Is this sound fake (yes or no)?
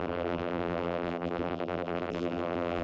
yes